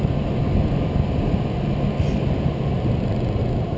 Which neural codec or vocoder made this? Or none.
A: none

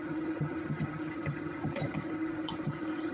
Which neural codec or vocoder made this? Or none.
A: vocoder, HiFi-GAN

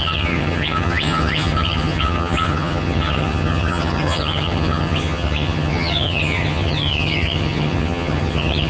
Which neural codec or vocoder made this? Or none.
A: vocoder, HiFi-GAN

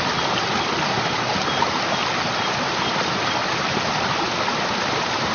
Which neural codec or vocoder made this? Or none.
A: none